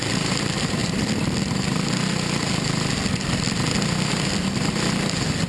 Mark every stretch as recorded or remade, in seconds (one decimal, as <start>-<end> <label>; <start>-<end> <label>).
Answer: 0.0-5.5 recorded